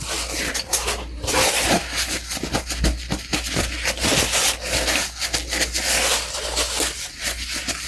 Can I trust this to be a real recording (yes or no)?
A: yes